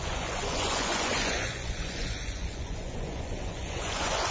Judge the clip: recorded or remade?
remade